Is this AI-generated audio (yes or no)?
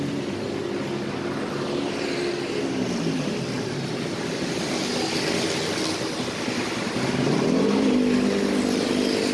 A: no